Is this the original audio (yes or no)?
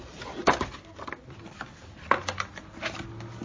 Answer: yes